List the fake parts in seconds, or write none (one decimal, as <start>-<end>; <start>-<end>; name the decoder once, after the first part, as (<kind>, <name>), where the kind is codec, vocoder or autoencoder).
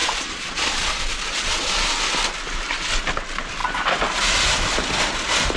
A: 0.0-1.8 (vocoder, Vocos)